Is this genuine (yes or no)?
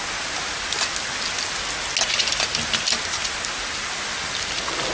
yes